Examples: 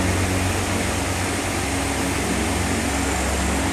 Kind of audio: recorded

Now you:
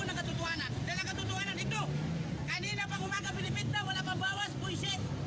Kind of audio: remade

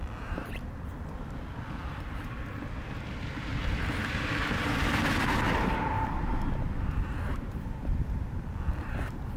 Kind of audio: remade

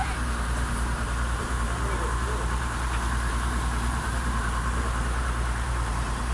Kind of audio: remade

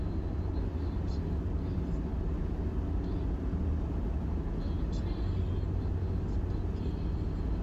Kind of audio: recorded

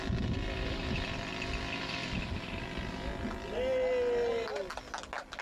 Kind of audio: recorded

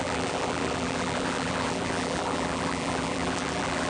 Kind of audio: remade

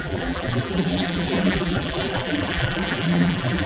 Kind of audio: remade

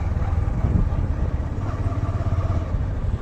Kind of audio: recorded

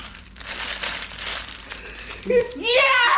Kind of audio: remade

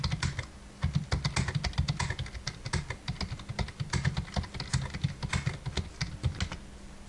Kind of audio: recorded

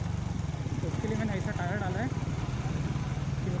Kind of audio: recorded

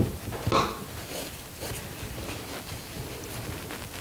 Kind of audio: recorded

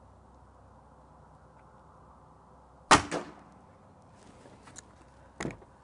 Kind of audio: recorded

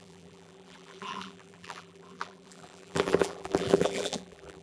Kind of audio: remade